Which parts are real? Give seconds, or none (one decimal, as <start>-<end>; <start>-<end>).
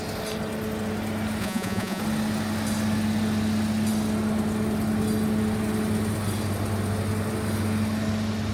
0.0-1.4; 2.0-8.5